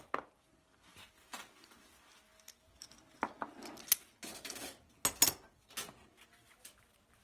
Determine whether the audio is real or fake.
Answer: real